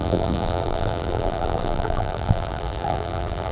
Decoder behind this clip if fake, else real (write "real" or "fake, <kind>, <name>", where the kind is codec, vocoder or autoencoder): fake, vocoder, BigVGAN v2